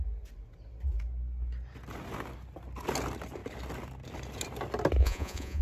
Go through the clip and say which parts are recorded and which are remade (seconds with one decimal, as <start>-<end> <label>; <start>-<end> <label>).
0.0-5.0 recorded; 5.0-5.6 remade